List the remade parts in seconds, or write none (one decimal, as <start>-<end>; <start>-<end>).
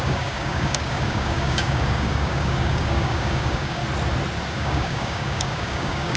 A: 0.0-3.8; 4.5-6.2